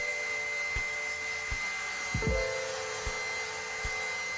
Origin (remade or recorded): recorded